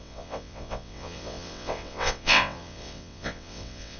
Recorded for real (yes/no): no